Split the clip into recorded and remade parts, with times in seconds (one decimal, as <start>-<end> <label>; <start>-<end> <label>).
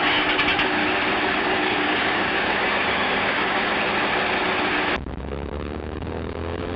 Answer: 0.0-0.8 remade; 0.8-1.4 recorded; 1.4-3.7 remade; 3.7-5.2 recorded; 5.2-6.8 remade